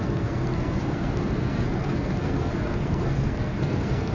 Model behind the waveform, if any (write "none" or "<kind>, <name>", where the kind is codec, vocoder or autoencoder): codec, SNAC